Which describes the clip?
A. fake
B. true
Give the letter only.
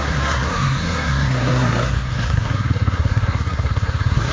A